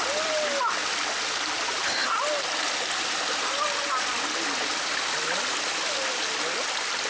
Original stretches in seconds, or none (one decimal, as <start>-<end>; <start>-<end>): 0.0-7.1